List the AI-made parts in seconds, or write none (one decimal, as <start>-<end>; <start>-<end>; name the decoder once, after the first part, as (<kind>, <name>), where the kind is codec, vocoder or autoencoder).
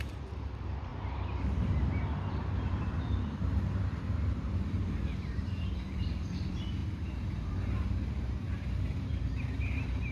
0.0-0.9 (vocoder, BigVGAN v2); 2.3-10.1